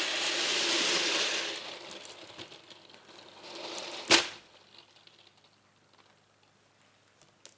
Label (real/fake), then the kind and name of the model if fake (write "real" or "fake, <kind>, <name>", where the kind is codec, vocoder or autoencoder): real